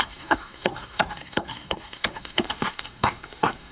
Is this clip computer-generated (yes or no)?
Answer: yes